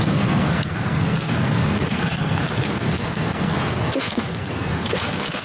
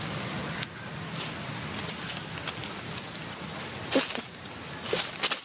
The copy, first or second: first